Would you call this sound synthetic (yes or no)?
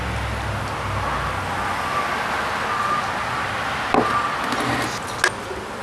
no